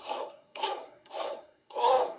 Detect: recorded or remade remade